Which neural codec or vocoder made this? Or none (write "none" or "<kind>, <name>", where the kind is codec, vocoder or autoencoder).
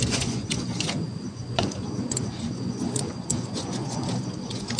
vocoder, Vocos